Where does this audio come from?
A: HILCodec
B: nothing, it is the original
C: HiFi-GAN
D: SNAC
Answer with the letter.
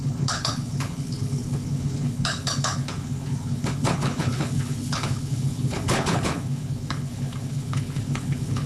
A